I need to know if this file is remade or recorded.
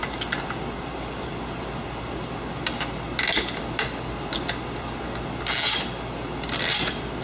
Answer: recorded